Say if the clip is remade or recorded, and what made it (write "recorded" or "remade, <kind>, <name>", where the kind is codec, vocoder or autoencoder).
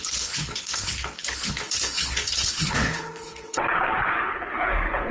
remade, codec, HILCodec